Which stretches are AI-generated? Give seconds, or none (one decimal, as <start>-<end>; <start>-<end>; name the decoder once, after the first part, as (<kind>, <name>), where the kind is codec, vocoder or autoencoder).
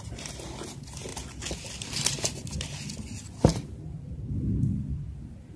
3.5-4.4 (vocoder, BigVGAN v2)